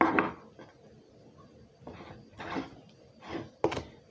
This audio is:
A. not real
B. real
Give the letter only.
B